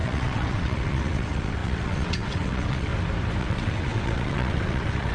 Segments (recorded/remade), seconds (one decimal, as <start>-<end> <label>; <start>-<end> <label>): 0.0-2.9 remade; 2.9-3.4 recorded; 3.4-5.1 remade